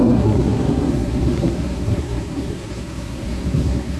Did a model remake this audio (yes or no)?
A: yes